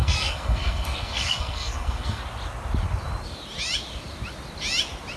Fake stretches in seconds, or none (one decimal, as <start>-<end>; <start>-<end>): 0.0-2.2